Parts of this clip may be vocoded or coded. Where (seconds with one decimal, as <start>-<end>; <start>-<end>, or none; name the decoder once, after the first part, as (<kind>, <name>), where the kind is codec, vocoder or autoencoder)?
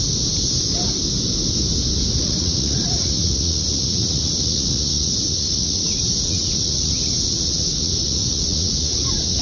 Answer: 2.2-9.4 (vocoder, Vocos)